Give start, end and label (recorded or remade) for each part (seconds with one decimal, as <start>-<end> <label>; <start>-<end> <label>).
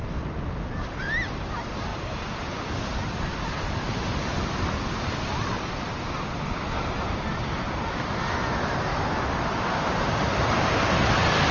0.0-11.5 recorded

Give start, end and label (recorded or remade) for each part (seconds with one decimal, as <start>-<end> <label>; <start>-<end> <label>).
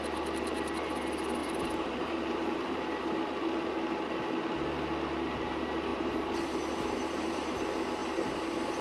0.0-1.4 recorded; 1.4-3.2 remade; 3.2-5.9 recorded; 5.9-7.6 remade; 7.6-8.0 recorded; 8.0-8.8 remade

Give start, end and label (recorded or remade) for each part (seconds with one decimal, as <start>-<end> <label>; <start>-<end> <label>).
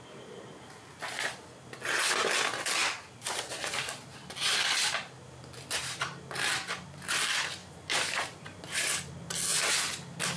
0.0-2.8 recorded; 2.8-3.3 remade; 3.3-4.1 recorded; 4.1-6.0 remade; 6.0-7.6 recorded; 7.6-8.6 remade; 8.6-9.5 recorded; 9.5-10.4 remade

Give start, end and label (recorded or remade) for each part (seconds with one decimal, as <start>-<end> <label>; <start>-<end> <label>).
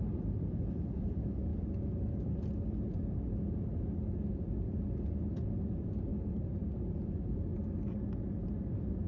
0.0-1.5 remade; 1.5-4.3 recorded; 4.3-6.1 remade; 6.1-7.0 recorded; 7.0-7.5 remade; 7.5-8.1 recorded; 8.1-9.1 remade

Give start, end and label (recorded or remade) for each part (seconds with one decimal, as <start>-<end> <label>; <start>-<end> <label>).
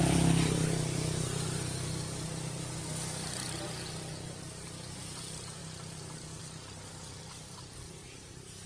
0.0-5.6 recorded; 5.6-6.4 remade; 6.4-8.0 recorded; 8.0-8.7 remade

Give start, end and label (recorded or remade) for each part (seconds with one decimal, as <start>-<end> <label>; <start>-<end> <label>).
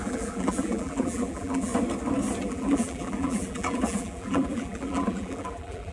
0.0-1.7 remade; 1.7-2.4 recorded; 2.4-5.9 remade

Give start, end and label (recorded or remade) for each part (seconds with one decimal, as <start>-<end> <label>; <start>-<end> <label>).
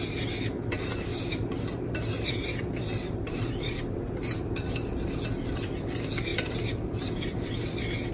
0.0-1.1 recorded; 1.1-4.5 remade; 4.5-6.3 recorded; 6.3-7.5 remade; 7.5-8.1 recorded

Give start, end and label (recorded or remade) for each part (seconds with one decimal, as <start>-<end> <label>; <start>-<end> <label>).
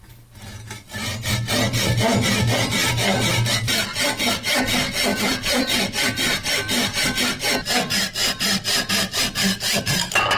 0.0-5.1 recorded; 5.1-7.5 remade; 7.5-8.2 recorded; 8.2-8.9 remade; 8.9-10.4 recorded